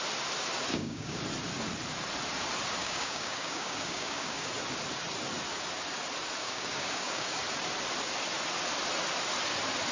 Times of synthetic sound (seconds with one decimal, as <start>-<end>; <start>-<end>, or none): 0.7-1.2; 2.8-4.5; 6.4-7.4